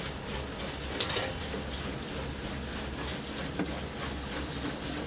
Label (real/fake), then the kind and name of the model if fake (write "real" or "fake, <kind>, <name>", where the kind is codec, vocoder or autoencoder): real